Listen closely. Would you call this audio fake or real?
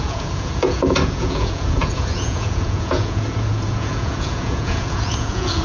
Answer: fake